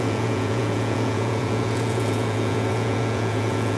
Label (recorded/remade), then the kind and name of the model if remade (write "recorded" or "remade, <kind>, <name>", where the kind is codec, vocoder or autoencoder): remade, vocoder, Vocos